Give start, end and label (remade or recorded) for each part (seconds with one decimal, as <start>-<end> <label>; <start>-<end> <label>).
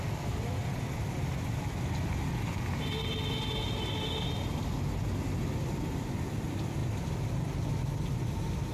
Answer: 0.0-8.7 recorded